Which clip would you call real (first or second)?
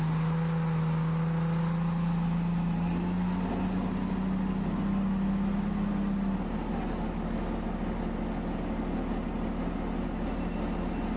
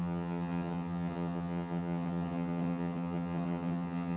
first